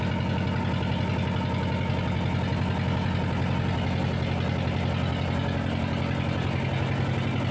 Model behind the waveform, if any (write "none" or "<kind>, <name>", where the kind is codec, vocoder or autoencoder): none